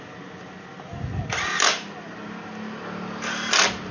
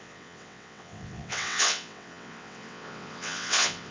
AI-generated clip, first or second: second